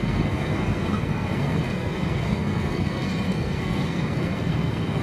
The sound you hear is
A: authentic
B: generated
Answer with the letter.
B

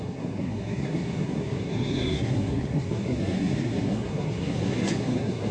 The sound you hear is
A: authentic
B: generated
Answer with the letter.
B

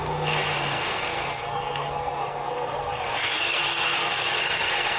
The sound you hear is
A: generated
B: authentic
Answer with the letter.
A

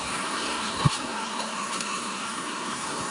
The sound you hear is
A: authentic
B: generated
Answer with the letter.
B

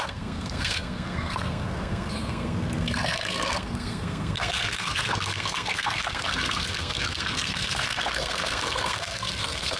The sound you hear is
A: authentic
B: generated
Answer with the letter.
B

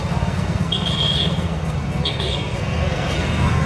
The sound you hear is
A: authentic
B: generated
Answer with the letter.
B